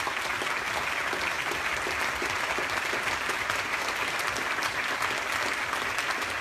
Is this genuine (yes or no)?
yes